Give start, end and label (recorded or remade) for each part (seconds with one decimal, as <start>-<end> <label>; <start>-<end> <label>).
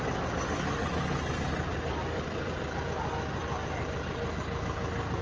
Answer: 0.0-1.7 recorded; 1.7-2.8 remade; 2.8-3.4 recorded; 3.4-4.6 remade; 4.6-5.2 recorded